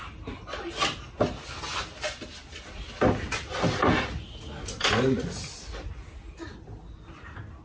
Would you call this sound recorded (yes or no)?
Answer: yes